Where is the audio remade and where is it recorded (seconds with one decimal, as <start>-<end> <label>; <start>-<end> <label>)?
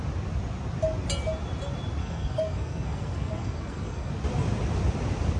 0.0-2.0 recorded; 2.0-4.1 remade; 4.1-5.4 recorded